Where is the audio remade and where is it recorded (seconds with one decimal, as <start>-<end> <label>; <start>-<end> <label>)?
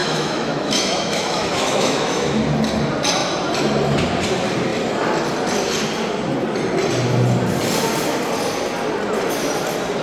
0.0-2.4 remade; 2.4-10.0 recorded